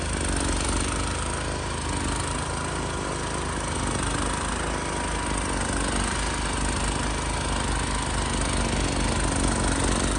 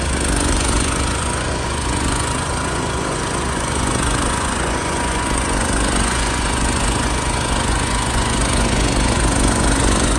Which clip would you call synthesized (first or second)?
second